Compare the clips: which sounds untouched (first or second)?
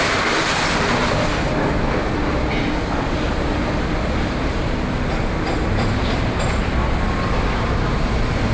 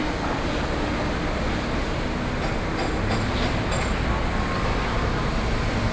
second